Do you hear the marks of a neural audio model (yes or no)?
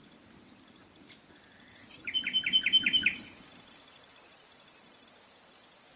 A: no